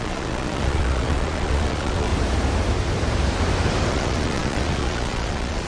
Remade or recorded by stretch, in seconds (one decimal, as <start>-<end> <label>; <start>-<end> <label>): 0.0-2.1 remade; 2.1-3.9 recorded; 3.9-5.7 remade